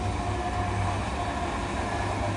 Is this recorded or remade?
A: recorded